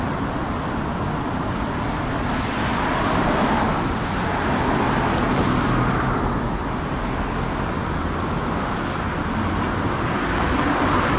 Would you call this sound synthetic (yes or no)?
no